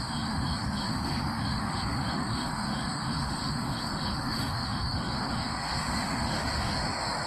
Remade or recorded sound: remade